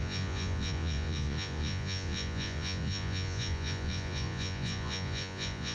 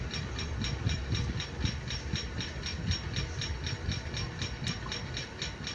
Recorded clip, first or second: second